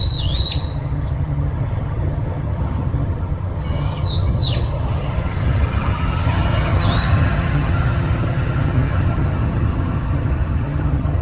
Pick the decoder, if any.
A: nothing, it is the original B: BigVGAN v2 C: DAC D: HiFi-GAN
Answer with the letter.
D